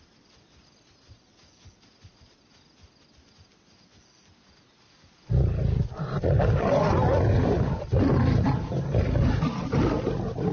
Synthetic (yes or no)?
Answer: no